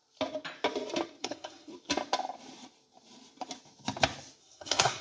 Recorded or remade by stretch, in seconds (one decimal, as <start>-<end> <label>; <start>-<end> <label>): 0.0-1.2 recorded; 1.2-1.7 remade; 1.7-4.4 recorded; 4.4-5.0 remade